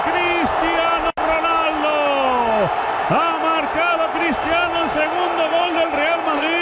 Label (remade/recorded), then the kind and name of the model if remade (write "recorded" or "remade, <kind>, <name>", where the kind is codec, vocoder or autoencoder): recorded